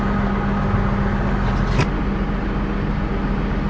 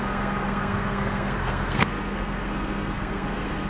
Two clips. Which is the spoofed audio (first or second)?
second